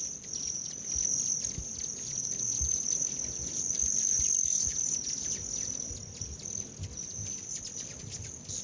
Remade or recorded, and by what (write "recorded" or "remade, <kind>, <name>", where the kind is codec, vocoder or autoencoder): recorded